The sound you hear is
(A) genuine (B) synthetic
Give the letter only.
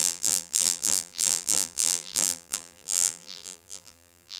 B